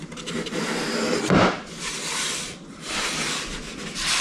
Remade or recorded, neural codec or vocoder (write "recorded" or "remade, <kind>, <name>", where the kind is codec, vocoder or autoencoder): remade, vocoder, BigVGAN v2